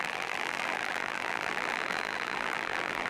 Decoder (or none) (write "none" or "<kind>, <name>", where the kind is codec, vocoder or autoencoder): vocoder, BigVGAN v2